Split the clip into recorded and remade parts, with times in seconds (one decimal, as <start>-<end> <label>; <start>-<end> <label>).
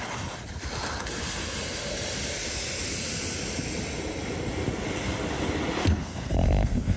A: 0.0-5.8 recorded; 5.8-7.0 remade